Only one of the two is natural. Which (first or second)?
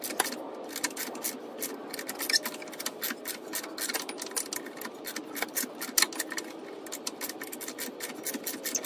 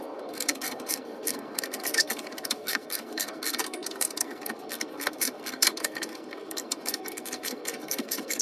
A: first